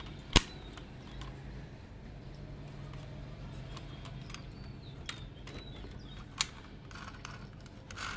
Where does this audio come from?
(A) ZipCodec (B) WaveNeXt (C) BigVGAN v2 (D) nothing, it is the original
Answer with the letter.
D